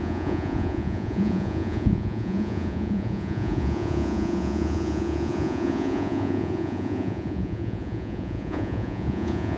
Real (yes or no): no